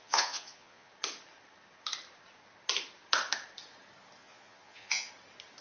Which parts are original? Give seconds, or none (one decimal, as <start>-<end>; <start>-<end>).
0.9-4.2; 5.1-5.6

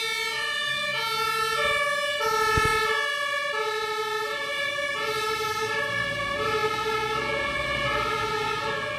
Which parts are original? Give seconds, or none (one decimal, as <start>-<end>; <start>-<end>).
0.0-9.0

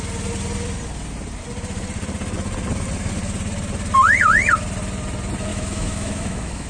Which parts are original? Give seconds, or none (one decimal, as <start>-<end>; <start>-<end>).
0.0-5.5

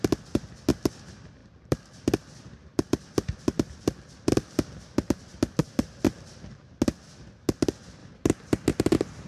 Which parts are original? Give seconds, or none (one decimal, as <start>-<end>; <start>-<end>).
0.0-1.4; 5.2-9.3

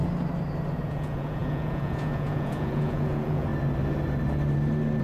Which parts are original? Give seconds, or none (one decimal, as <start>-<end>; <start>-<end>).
0.0-0.9; 3.5-5.0

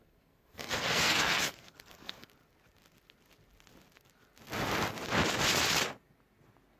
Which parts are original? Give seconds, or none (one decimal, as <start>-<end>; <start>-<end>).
2.3-6.8

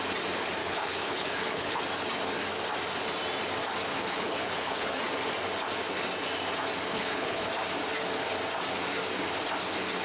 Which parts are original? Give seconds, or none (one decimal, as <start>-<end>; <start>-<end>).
0.0-0.6; 1.8-3.9; 5.0-6.9; 7.5-10.0

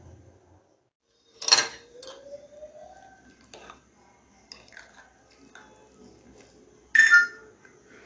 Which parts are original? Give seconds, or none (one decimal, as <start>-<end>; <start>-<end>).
0.0-8.1